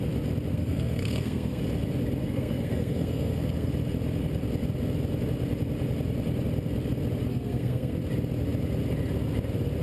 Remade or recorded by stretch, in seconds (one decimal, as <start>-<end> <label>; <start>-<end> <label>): 0.0-0.5 recorded; 0.5-1.6 remade; 1.6-2.2 recorded; 2.2-3.7 remade; 3.7-7.3 recorded; 7.3-8.0 remade; 8.0-9.8 recorded